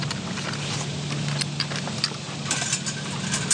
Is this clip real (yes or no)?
yes